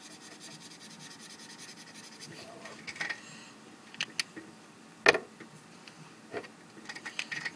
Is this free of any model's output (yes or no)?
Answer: yes